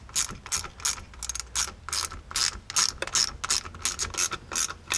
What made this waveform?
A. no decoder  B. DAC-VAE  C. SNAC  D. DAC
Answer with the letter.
A